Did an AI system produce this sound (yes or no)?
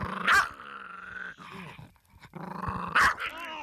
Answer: no